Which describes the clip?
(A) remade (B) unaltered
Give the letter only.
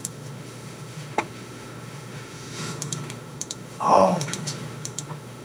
A